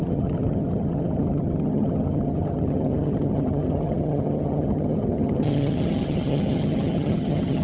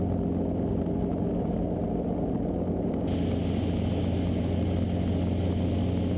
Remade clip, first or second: first